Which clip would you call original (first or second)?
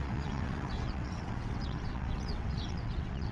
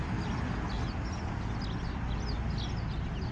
second